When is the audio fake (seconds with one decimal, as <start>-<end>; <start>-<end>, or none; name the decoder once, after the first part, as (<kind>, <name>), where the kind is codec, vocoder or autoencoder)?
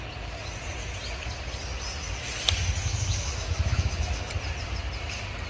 2.8-4.3 (autoencoder, DAC-VAE)